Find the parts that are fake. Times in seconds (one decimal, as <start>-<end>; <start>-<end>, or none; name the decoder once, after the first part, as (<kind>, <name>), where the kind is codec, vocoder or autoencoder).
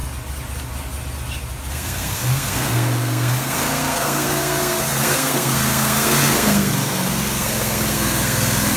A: 1.7-8.8 (codec, SNAC)